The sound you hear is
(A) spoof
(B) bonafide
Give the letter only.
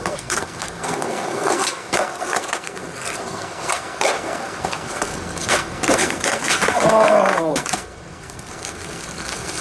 A